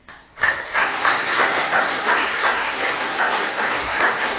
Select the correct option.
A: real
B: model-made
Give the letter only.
B